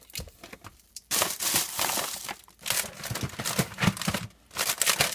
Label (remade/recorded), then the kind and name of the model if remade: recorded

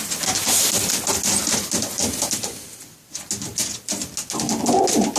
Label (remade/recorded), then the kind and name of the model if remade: recorded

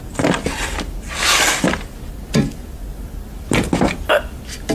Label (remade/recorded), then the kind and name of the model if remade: recorded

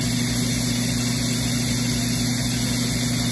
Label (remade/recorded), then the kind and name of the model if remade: recorded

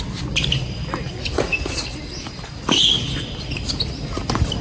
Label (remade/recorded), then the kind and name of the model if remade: recorded